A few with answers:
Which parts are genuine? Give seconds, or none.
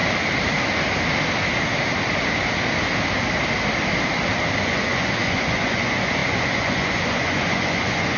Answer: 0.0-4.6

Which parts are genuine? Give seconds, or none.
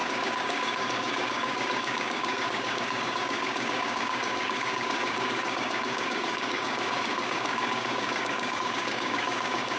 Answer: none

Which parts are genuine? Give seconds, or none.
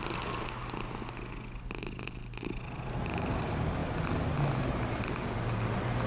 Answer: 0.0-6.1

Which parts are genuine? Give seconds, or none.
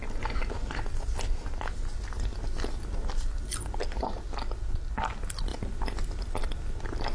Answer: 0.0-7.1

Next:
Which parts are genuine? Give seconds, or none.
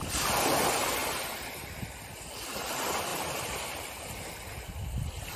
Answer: 0.0-3.1; 3.8-5.4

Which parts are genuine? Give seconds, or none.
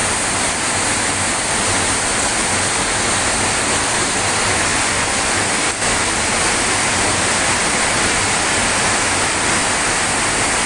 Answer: 0.0-4.7; 5.4-10.7